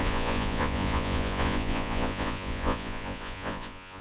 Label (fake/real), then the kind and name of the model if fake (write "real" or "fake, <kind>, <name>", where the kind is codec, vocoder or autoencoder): fake, vocoder, Vocos